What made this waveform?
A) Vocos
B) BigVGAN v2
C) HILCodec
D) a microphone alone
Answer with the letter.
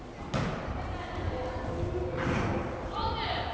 D